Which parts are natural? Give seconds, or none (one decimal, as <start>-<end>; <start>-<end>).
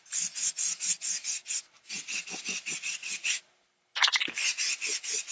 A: 0.0-5.3